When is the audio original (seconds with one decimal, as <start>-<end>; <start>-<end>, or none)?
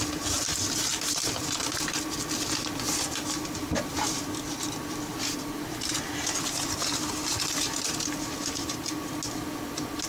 0.0-10.1